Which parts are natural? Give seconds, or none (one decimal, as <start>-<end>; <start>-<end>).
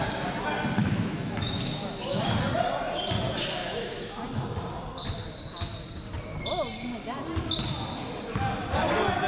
0.0-0.8; 2.3-3.6; 4.2-9.3